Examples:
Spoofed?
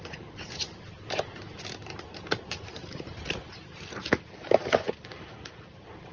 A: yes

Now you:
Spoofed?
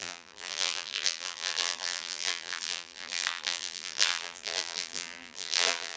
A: yes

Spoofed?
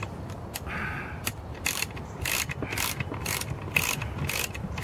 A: no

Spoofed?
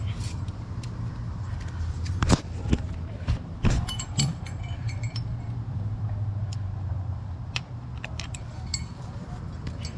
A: yes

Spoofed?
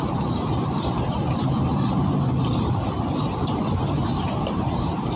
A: yes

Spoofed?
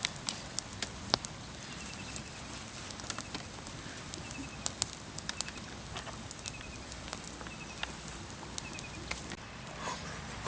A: no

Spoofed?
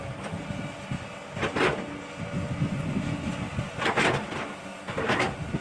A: no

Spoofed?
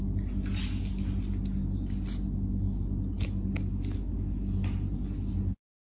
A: no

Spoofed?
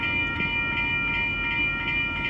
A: no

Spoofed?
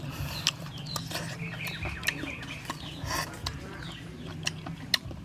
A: no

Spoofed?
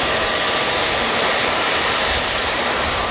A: yes